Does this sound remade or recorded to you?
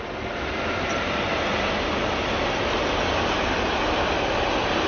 recorded